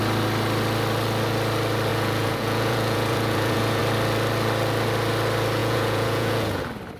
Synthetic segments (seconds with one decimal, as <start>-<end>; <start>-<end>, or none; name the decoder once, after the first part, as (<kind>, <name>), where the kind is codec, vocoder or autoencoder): 1.9-3.8 (vocoder, Vocos); 5.6-6.6